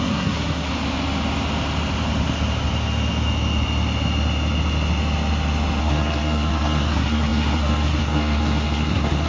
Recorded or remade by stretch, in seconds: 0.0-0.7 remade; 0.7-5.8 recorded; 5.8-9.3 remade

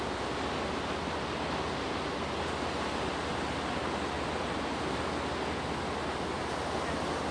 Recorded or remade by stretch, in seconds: 0.0-7.3 recorded